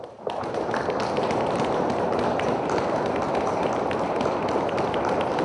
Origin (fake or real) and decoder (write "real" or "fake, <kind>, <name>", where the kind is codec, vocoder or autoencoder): real